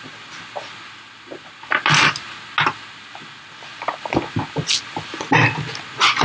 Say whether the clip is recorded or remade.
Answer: recorded